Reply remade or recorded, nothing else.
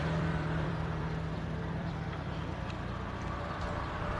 remade